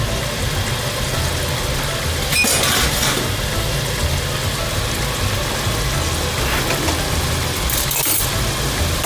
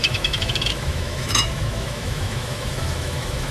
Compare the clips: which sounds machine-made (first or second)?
second